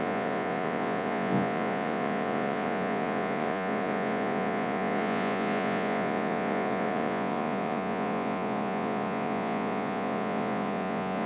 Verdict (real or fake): fake